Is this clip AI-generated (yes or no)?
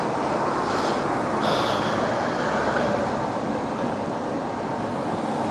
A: no